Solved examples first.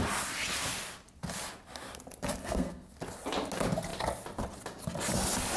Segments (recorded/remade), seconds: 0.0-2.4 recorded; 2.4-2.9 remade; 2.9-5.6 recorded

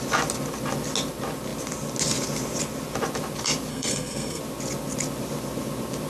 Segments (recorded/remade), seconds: 0.0-3.7 recorded; 3.7-4.4 remade; 4.4-6.1 recorded

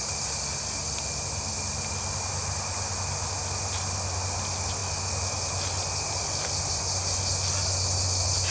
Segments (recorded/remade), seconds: 0.0-8.5 recorded